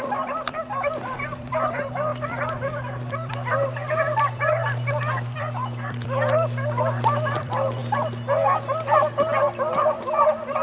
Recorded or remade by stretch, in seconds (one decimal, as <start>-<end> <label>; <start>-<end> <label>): 0.0-7.8 remade; 7.8-9.7 recorded; 9.7-10.6 remade